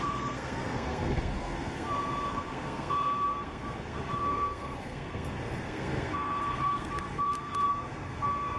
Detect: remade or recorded remade